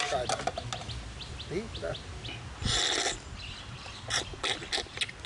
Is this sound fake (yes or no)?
no